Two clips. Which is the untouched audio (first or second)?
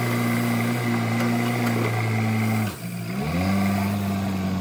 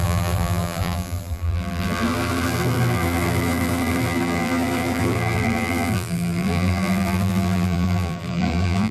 first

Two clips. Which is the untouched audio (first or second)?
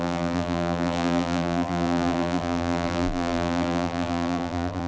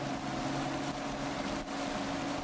second